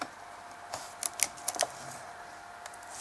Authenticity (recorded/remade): recorded